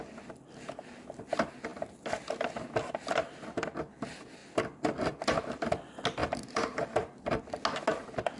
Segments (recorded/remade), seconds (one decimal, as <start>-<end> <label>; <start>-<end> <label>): 0.0-6.2 recorded; 6.2-7.4 remade; 7.4-8.4 recorded